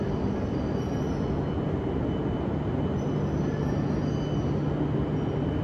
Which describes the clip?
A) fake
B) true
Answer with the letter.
B